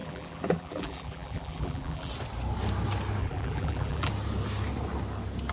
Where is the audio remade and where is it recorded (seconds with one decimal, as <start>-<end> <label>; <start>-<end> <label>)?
0.0-2.1 remade; 2.1-3.2 recorded; 3.2-4.1 remade; 4.1-5.5 recorded